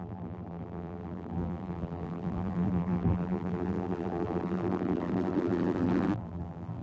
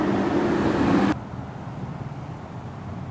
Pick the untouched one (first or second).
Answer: second